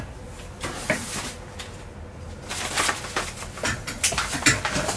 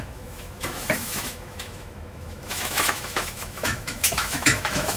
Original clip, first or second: first